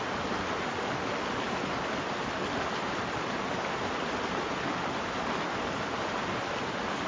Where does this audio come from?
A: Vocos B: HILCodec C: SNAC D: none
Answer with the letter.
D